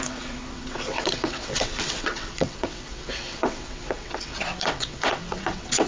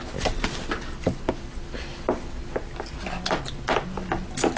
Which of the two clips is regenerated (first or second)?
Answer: first